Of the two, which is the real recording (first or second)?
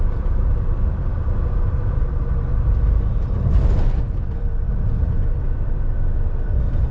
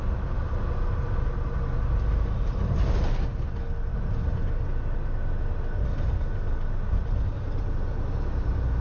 second